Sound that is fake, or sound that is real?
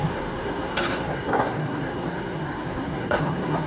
fake